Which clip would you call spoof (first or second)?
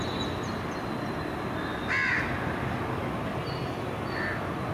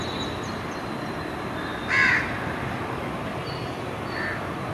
second